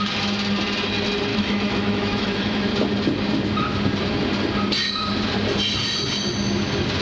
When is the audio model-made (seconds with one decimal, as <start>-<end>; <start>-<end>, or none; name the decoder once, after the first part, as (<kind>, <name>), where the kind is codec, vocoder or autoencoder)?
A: 1.3-2.7 (autoencoder, DAC-VAE)